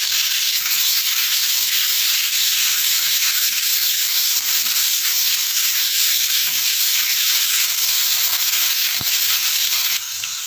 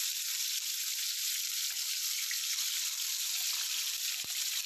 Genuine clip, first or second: second